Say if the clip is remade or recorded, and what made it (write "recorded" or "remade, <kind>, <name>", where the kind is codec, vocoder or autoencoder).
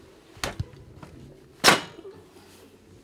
recorded